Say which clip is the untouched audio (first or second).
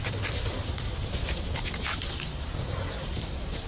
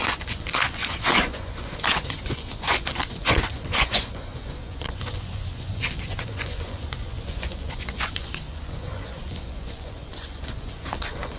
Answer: first